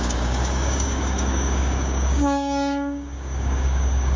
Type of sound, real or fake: fake